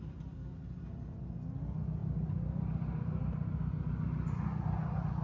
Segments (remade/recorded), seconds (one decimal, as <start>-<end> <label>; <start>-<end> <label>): 0.0-5.2 recorded